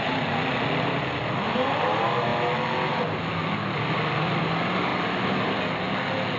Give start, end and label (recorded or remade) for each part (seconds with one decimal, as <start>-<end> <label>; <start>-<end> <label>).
0.0-6.4 recorded